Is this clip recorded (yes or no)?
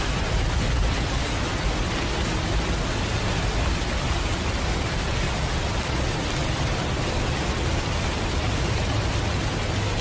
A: yes